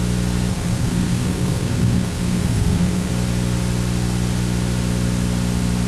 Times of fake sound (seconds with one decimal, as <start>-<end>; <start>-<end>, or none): 0.5-3.1

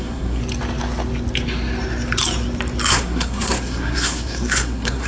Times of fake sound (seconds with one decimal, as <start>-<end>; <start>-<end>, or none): 0.0-0.4; 2.9-5.1

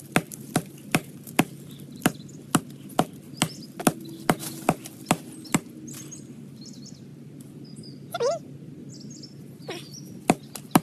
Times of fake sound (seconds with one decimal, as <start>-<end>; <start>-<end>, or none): none

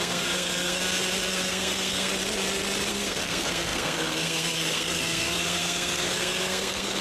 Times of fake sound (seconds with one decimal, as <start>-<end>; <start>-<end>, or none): 0.0-0.8; 1.3-2.1; 2.9-7.0

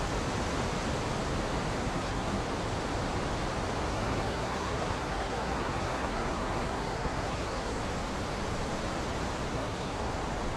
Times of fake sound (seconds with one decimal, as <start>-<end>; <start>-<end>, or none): 1.8-2.4; 3.9-7.8; 9.5-10.1

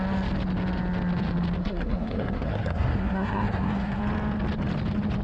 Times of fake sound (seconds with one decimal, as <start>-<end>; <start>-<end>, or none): 1.6-4.0